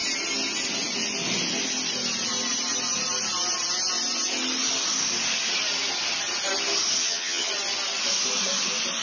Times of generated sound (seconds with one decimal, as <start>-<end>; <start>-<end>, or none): 7.0-7.5